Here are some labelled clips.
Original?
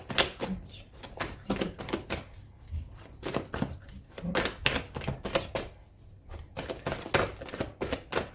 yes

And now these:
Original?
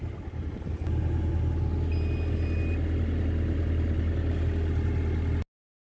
yes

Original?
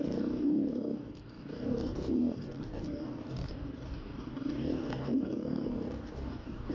no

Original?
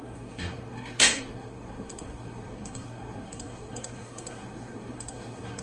no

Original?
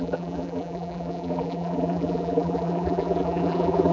no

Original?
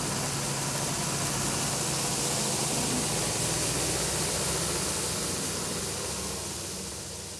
yes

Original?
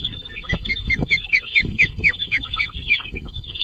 no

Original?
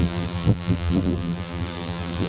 no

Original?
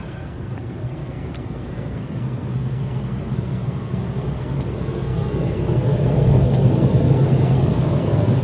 no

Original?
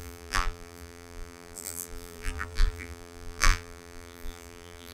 no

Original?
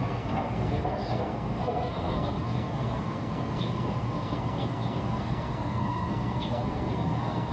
no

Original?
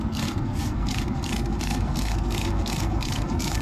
no